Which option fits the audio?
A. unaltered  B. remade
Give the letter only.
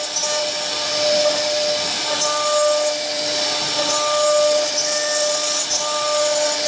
A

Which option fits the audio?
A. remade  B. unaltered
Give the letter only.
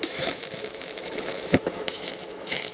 A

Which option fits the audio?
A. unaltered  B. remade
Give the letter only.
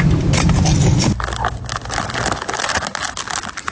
A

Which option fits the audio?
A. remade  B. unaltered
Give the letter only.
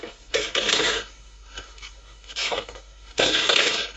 A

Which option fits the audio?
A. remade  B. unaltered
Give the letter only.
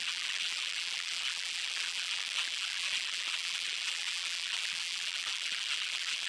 A